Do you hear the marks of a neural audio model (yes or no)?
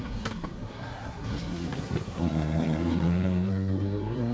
yes